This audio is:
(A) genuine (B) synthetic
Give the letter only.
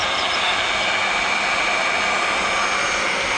A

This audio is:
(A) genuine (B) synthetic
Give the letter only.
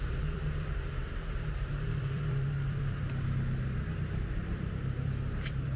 B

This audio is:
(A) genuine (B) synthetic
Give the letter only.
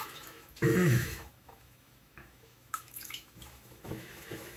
B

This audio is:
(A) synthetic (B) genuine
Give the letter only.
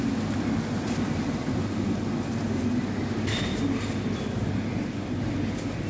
B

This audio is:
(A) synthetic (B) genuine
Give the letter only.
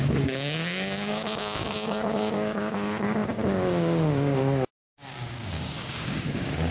A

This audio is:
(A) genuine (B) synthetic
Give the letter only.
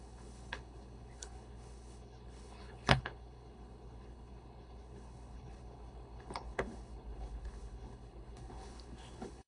B